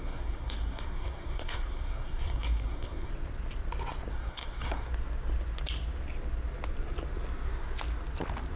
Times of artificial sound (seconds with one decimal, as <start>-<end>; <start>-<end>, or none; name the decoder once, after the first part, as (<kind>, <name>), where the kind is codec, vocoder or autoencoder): 0.0-3.1 (codec, SNAC); 4.1-4.9